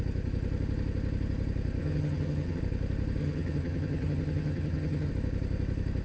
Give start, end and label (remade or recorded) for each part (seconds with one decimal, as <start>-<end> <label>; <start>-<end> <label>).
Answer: 0.0-1.8 recorded; 1.8-2.6 remade; 2.6-3.2 recorded; 3.2-5.1 remade; 5.1-6.0 recorded